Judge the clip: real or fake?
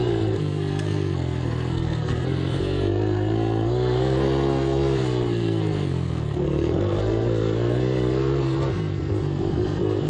fake